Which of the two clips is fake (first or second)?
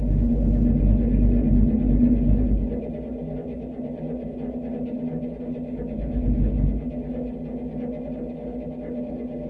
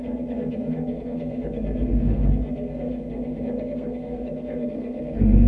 second